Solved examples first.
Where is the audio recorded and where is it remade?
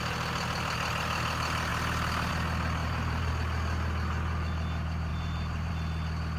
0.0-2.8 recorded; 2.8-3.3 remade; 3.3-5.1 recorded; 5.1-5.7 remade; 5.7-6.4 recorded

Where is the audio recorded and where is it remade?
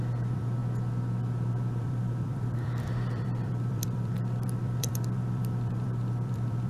0.0-0.6 remade; 0.6-1.5 recorded; 1.5-6.7 remade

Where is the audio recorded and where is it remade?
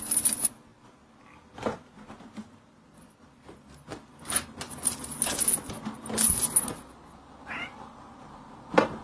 0.0-0.7 recorded; 0.7-4.7 remade; 4.7-9.0 recorded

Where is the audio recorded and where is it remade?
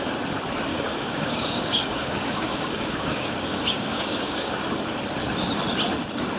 0.0-0.7 recorded; 0.7-4.5 remade; 4.5-6.4 recorded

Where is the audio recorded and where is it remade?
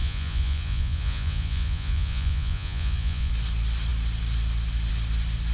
0.0-3.3 remade; 3.3-5.5 recorded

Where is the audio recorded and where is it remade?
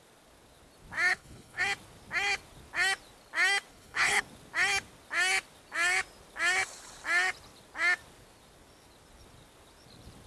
0.0-1.1 recorded; 1.1-1.6 remade; 1.6-3.7 recorded; 3.7-4.2 remade; 4.2-10.3 recorded